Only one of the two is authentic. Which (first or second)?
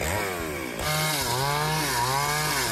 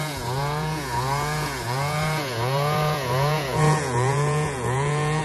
first